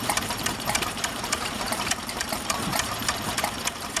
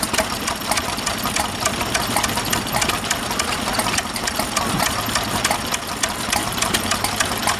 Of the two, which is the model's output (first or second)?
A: first